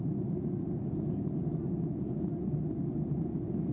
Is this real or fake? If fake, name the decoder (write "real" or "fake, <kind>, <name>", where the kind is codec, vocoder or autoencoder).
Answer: real